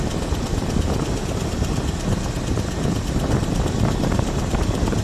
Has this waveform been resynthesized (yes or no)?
no